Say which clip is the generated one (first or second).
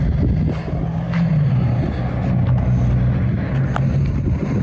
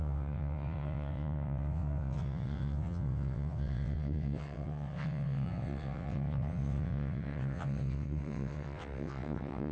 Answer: second